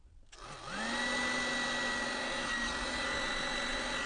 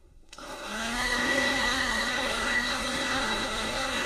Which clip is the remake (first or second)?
second